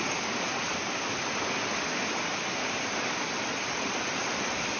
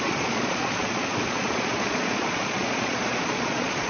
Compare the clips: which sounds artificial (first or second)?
second